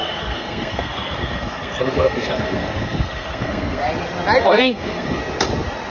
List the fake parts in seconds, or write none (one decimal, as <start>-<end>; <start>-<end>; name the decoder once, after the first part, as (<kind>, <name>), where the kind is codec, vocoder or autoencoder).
0.0-3.8 (codec, SNAC); 4.4-5.2